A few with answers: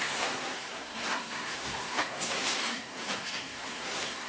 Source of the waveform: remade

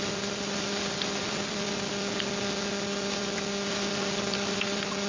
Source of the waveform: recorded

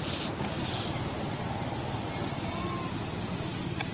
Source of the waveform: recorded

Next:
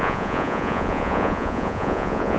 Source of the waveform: remade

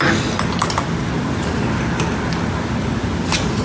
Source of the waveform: recorded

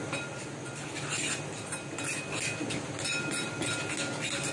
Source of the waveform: recorded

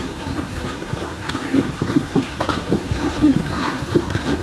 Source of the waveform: remade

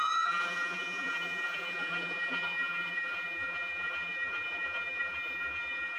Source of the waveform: remade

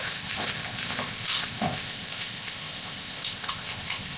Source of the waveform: remade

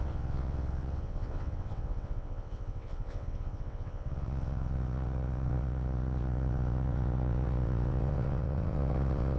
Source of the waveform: remade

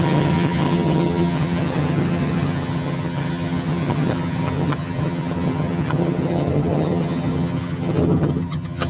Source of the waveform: remade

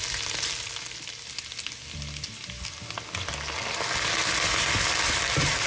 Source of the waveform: recorded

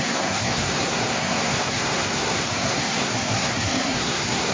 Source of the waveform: remade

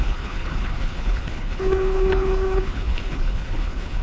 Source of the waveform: remade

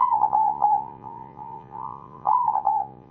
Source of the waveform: remade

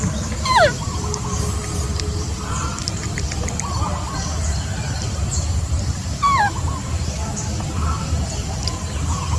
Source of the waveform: recorded